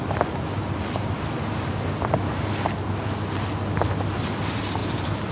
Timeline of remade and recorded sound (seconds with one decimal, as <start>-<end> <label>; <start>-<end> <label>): 0.0-5.3 recorded